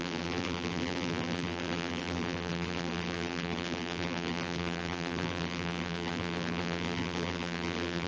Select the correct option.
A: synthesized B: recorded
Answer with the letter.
A